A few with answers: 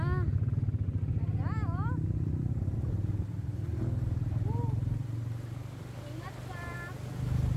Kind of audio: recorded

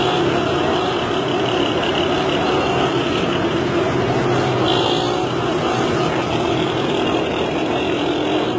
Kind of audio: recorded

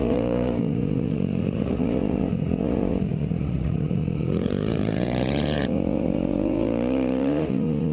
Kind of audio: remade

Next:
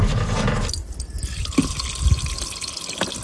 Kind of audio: recorded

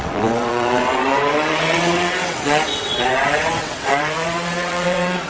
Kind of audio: remade